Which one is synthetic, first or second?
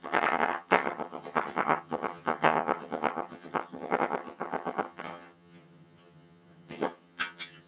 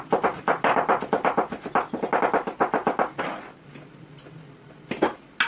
first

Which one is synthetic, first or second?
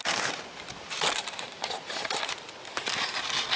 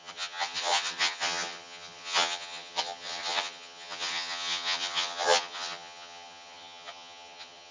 second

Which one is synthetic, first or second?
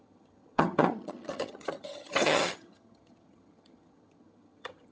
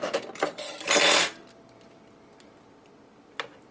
first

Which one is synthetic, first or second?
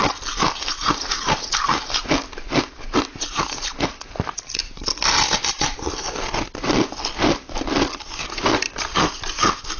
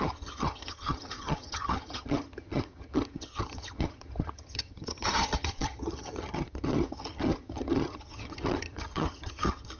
second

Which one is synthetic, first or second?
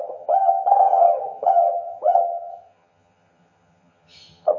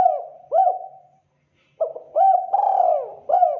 first